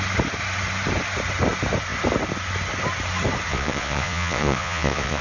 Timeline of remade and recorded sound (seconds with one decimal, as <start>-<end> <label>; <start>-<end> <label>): 0.0-3.5 recorded; 3.5-5.2 remade